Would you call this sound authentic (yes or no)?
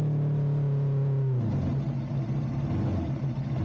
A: yes